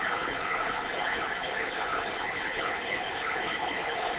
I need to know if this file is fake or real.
fake